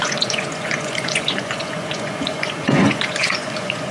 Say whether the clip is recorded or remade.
remade